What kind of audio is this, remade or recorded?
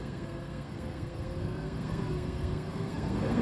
remade